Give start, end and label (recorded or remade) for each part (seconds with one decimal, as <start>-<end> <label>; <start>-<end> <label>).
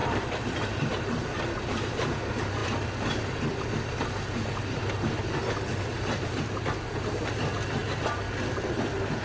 0.0-1.4 remade; 1.4-2.6 recorded; 2.6-3.8 remade; 3.8-9.2 recorded